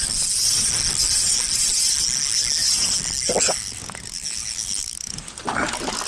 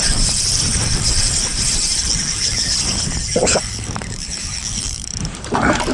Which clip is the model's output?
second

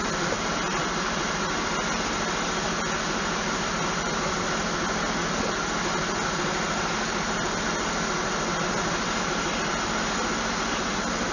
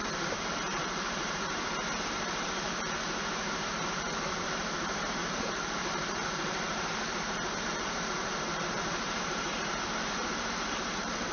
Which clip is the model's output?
second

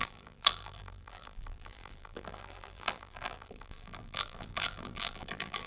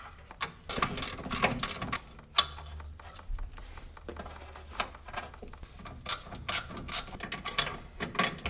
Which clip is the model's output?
first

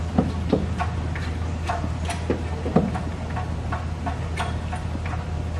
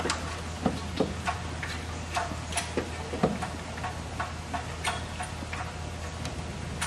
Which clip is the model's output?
first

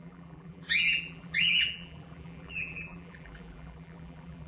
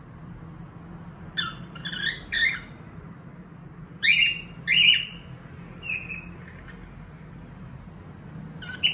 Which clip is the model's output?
first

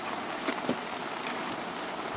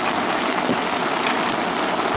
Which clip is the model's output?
first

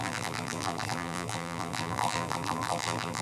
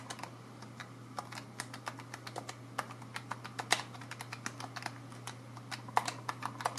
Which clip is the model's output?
first